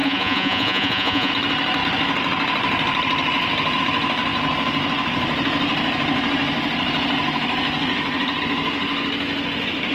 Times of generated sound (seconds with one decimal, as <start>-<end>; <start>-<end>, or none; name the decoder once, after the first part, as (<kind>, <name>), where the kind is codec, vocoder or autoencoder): 0.0-1.3 (vocoder, Vocos)